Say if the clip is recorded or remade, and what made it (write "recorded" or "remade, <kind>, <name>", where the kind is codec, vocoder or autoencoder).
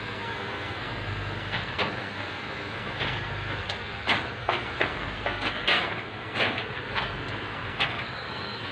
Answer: remade, codec, SNAC